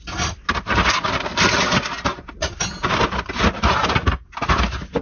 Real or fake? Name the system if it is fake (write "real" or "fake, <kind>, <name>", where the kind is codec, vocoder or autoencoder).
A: real